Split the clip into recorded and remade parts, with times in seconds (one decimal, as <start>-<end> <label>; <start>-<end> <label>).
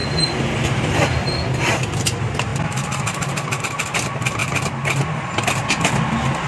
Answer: 0.0-6.5 recorded